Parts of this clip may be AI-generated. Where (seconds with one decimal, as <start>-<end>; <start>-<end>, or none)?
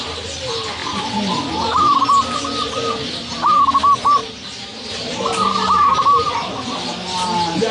4.2-4.9